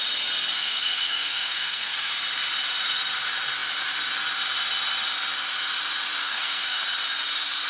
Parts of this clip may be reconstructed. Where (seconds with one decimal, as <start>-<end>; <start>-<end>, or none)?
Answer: 0.5-2.1; 6.2-6.8